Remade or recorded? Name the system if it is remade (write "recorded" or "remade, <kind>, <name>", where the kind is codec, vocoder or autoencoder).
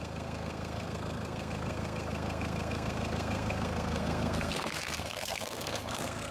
remade, codec, SNAC